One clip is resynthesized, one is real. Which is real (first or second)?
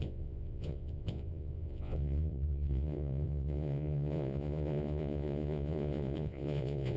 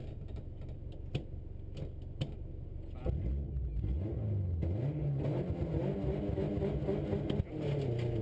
second